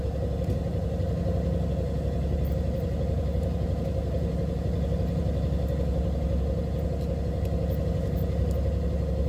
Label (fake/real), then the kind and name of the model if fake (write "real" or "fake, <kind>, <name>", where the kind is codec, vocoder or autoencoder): real